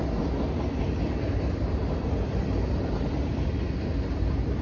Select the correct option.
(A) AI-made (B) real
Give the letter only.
B